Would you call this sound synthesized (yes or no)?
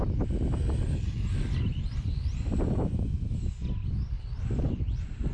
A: no